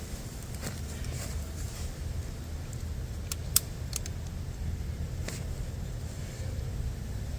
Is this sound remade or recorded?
recorded